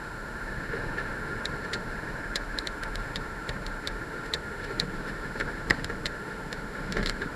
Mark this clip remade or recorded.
remade